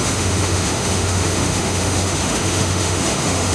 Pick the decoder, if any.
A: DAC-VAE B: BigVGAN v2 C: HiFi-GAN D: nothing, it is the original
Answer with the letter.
A